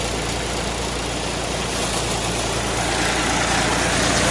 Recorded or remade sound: recorded